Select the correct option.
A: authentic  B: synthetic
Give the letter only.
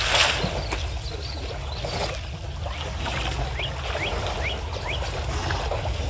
A